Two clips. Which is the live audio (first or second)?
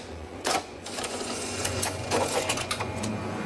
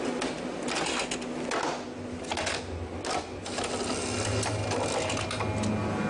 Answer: second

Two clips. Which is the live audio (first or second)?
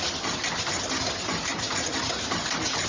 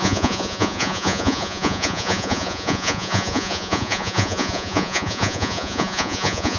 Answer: first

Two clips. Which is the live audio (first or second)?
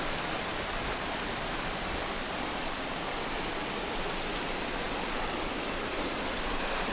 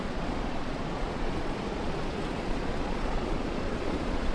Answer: first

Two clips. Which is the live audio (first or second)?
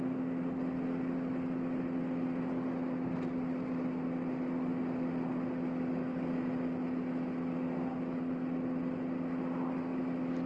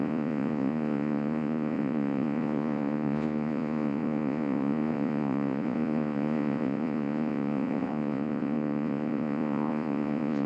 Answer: first